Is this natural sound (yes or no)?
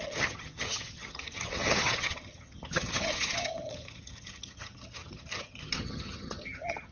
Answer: no